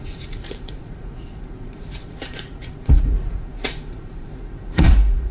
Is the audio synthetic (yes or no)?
yes